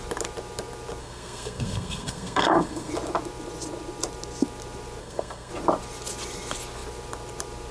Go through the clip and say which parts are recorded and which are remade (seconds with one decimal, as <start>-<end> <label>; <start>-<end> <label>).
0.0-1.0 recorded; 1.0-2.9 remade; 2.9-5.0 recorded; 5.0-5.5 remade; 5.5-7.7 recorded